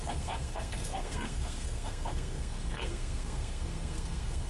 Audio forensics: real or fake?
fake